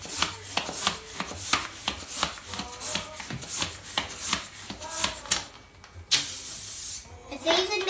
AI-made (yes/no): no